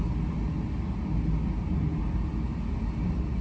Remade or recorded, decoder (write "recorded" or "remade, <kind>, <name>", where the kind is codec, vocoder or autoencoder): recorded